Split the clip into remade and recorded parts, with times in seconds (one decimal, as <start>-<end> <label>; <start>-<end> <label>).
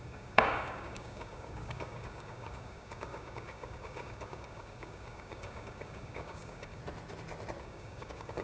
0.0-6.8 remade; 6.8-7.6 recorded; 7.6-8.4 remade